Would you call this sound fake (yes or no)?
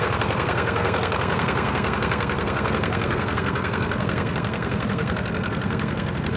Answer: yes